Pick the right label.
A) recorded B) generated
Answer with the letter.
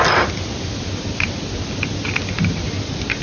A